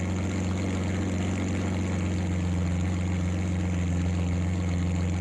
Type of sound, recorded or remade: recorded